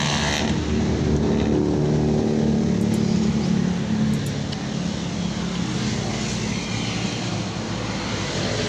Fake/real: real